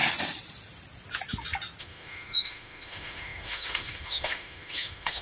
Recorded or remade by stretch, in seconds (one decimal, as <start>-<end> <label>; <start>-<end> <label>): 0.0-1.8 recorded; 1.8-5.2 remade